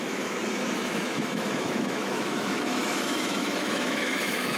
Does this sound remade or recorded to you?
remade